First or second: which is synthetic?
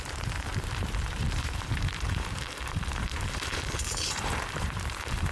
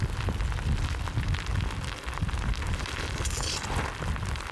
first